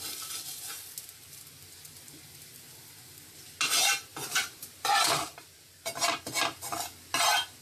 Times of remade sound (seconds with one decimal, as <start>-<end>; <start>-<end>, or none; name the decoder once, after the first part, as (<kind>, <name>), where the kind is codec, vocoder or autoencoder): 4.1-6.2 (vocoder, BigVGAN v2)